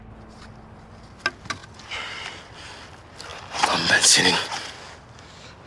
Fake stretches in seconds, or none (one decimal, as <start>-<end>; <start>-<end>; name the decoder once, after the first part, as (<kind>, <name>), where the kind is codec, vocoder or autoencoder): 1.6-2.4 (vocoder, BigVGAN v2); 3.3-4.6

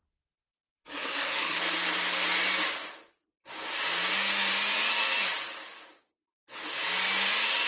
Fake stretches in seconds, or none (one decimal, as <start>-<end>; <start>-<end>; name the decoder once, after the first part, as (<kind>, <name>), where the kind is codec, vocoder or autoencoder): 0.8-1.6 (codec, SNAC)

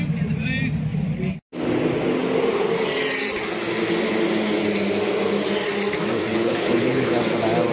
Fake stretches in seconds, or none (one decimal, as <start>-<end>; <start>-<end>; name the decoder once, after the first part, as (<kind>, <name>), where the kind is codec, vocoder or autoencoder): 6.3-7.2 (codec, HILCodec)

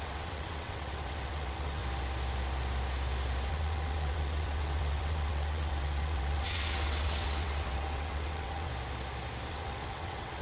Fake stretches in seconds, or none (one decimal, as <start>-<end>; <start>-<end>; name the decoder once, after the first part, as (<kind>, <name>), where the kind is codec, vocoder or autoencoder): 0.0-1.8 (vocoder, WaveNeXt); 3.5-8.7; 9.5-10.4

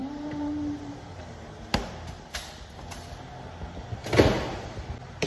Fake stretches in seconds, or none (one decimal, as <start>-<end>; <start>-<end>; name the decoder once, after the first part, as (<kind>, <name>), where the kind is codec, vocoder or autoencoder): 0.0-1.2 (vocoder, BigVGAN v2)